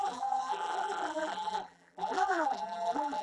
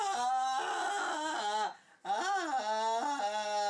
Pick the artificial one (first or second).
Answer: first